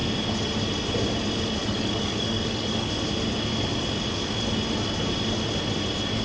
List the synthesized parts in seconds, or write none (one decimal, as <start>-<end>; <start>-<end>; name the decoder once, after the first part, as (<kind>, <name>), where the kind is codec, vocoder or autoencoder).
1.6-2.9 (codec, DAC)